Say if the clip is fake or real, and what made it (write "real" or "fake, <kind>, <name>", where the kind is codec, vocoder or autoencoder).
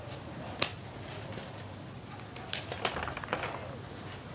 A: real